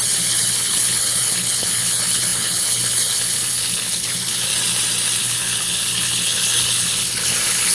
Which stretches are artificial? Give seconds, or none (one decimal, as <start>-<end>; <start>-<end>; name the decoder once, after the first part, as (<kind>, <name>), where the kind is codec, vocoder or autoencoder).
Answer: 0.0-4.5 (codec, HILCodec); 5.2-7.7